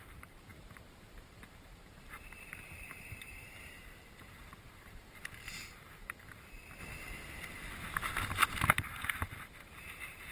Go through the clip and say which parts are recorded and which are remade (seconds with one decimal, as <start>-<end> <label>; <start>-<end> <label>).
0.0-6.8 remade; 6.8-8.7 recorded; 8.7-10.3 remade